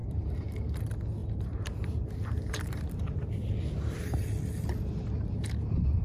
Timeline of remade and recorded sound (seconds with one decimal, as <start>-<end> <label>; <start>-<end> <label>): 0.0-0.7 remade; 0.7-1.2 recorded; 1.2-4.2 remade; 4.2-6.0 recorded